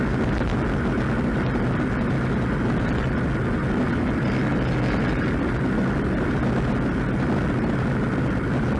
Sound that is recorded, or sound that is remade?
recorded